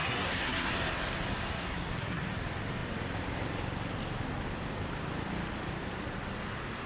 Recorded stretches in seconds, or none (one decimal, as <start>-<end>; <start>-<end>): 0.7-1.6; 2.2-6.9